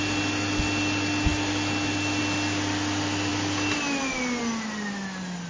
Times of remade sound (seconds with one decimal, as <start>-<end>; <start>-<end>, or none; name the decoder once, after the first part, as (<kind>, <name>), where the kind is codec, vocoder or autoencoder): none